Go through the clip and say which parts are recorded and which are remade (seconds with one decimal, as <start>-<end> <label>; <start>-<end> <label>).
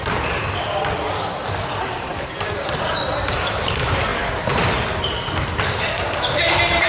0.0-6.9 recorded